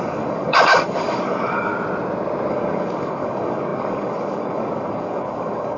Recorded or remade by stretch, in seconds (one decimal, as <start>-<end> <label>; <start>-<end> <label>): 0.0-1.7 remade; 1.7-2.5 recorded; 2.5-5.8 remade